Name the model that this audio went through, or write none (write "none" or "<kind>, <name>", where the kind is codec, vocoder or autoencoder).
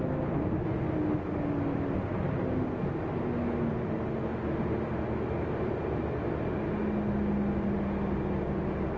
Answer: none